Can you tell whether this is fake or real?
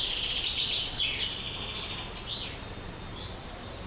real